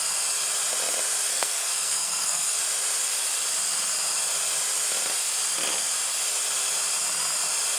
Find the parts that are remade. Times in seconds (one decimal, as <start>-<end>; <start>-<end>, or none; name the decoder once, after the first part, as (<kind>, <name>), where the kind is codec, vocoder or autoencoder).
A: 1.3-2.6 (codec, SNAC)